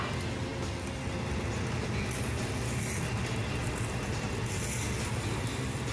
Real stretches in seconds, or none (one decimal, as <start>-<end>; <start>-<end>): 0.0-5.9